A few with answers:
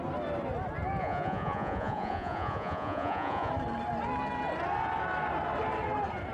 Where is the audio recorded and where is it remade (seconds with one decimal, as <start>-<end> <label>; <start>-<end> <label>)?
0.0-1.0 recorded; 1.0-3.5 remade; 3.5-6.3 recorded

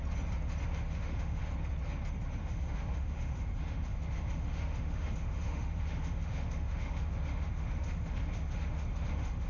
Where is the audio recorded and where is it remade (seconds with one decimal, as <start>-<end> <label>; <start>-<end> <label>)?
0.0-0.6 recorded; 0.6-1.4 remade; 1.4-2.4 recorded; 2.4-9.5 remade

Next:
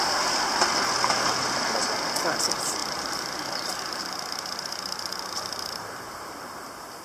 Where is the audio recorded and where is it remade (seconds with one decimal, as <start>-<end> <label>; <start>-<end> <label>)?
0.0-2.8 recorded; 2.8-6.4 remade; 6.4-7.0 recorded

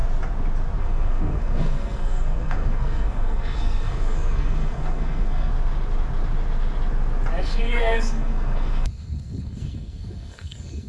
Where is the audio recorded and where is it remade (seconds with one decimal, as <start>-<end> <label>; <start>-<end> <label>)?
0.0-0.8 recorded; 0.8-5.5 remade; 5.5-7.4 recorded; 7.4-10.9 remade